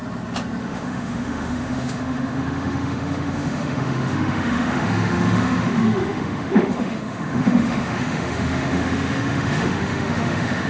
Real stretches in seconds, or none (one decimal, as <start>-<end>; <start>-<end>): 0.0-0.6